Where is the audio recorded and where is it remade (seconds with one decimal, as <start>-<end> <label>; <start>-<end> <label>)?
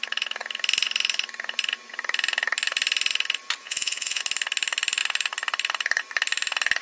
0.0-3.6 recorded; 3.6-4.2 remade; 4.2-6.8 recorded